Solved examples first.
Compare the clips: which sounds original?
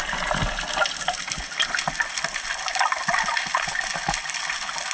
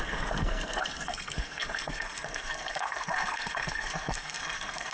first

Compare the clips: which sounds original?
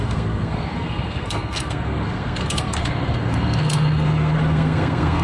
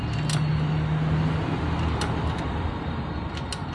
second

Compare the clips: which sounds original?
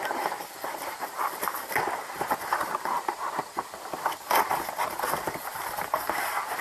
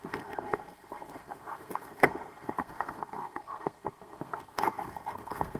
first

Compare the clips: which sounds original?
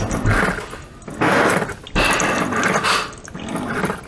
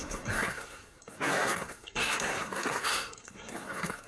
first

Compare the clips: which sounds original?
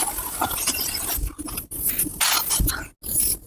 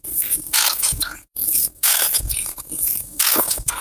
first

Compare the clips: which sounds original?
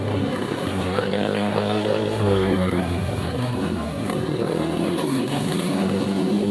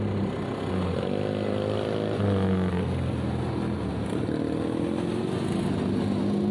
second